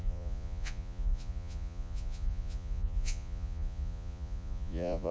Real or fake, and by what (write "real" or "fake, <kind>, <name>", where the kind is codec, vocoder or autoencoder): fake, vocoder, Vocos